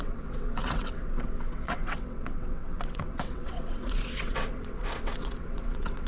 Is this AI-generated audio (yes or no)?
yes